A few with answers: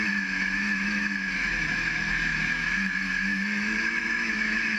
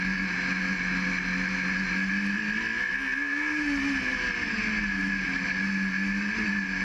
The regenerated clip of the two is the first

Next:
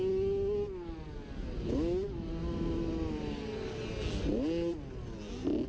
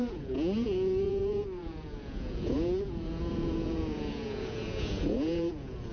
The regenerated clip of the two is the second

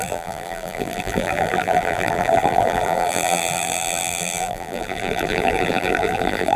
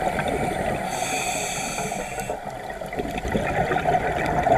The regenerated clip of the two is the first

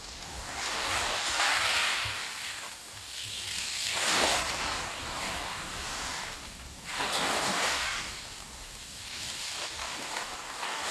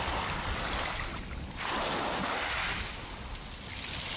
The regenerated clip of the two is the first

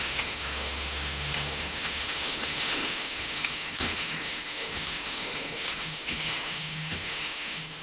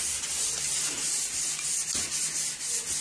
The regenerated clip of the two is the first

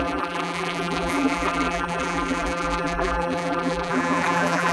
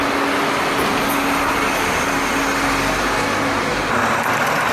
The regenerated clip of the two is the first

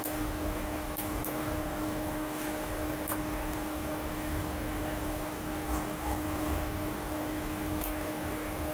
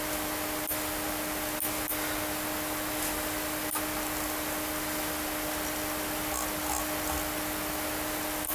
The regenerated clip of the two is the first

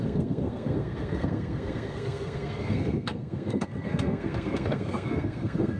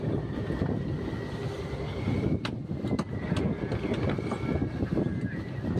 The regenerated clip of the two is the first